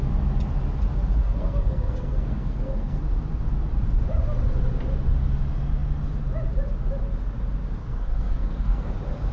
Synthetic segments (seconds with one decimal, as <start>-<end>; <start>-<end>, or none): 1.2-3.0; 7.8-8.9